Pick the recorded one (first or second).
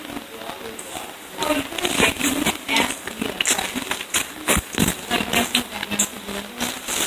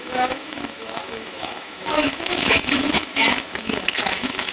first